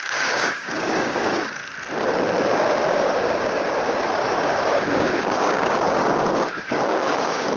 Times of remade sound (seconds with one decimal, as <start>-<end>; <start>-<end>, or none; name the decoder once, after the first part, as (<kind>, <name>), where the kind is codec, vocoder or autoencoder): 0.0-1.6 (codec, DAC); 2.9-7.6